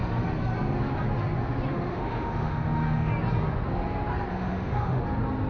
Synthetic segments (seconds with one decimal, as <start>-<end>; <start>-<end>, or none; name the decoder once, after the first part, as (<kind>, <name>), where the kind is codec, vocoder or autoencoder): 1.7-3.1 (autoencoder, DAC-VAE); 4.3-5.0